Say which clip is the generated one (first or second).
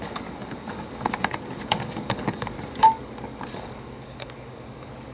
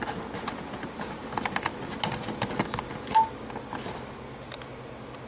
first